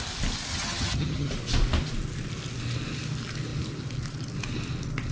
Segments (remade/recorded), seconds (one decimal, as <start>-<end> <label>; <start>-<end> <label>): 0.0-0.5 recorded; 0.5-1.3 remade; 1.3-5.1 recorded